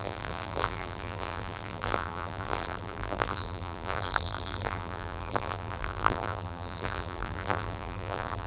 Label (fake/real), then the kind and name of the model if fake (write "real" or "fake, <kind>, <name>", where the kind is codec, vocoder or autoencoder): fake, vocoder, BigVGAN v2